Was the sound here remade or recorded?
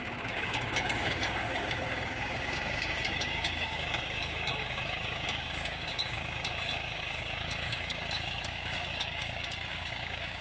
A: remade